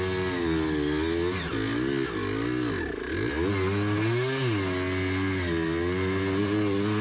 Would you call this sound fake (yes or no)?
no